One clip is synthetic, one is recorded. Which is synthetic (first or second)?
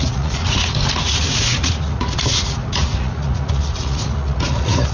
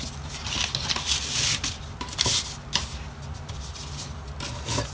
first